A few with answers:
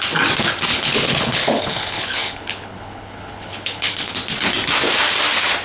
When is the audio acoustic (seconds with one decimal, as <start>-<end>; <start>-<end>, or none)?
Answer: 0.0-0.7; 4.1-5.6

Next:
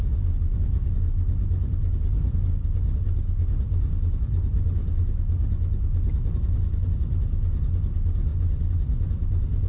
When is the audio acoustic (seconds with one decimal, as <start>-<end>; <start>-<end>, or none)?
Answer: 0.0-4.5; 5.0-9.7

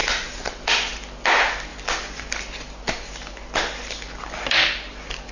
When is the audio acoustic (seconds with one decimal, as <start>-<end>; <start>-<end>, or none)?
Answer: 0.7-5.3

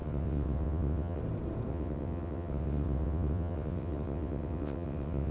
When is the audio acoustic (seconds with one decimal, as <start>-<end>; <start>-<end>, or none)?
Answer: 1.2-1.7

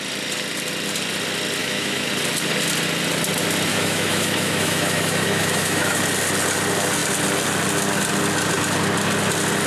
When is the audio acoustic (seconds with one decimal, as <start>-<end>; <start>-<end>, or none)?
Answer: 0.0-1.6; 2.1-3.7; 6.0-9.7

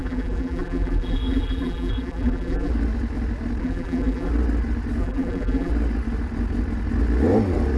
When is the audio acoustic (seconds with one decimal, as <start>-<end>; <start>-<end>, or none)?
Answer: 2.7-3.6; 4.3-5.0; 5.7-7.8

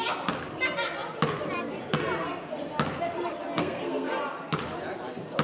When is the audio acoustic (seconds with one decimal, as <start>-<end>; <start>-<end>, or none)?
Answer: 0.0-3.6; 4.1-5.4

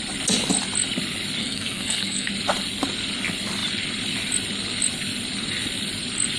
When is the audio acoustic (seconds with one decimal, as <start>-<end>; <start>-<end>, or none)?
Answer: 0.0-1.4; 2.3-6.4